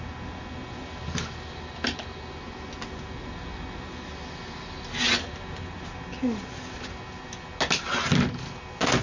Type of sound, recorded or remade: recorded